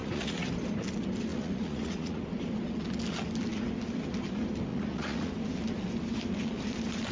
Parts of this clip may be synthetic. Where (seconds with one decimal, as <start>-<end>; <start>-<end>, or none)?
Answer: 0.0-0.5; 1.3-2.2; 4.7-5.3